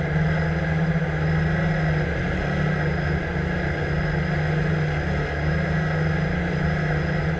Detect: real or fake real